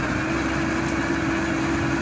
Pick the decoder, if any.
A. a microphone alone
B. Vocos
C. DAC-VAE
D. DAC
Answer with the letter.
A